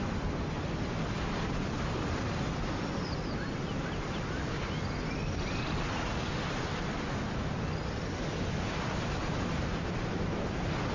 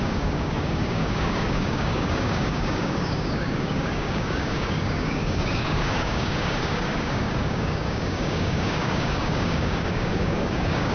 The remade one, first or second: second